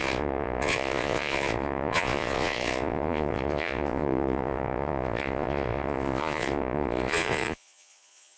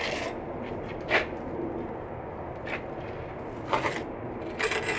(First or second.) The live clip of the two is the second